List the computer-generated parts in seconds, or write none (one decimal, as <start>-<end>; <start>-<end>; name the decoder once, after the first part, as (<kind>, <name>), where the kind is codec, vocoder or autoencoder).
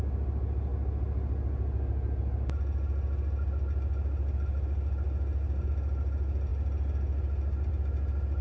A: none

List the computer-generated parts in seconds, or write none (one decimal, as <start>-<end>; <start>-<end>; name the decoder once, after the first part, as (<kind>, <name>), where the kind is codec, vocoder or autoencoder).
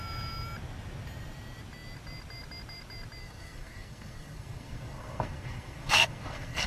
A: 3.2-6.7 (codec, SNAC)